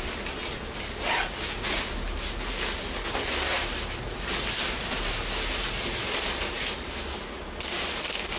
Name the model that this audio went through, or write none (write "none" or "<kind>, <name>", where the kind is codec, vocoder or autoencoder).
none